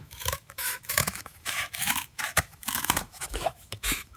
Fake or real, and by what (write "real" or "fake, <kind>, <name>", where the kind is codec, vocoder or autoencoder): fake, autoencoder, DAC-VAE